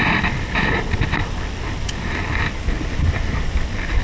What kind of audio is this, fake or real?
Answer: real